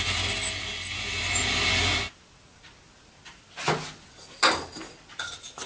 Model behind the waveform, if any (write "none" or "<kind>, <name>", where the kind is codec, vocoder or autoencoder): none